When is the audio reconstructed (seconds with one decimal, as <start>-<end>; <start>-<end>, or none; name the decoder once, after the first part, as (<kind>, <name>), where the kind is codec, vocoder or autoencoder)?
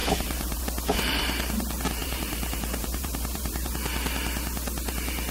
0.0-0.6 (vocoder, BigVGAN v2); 2.0-3.7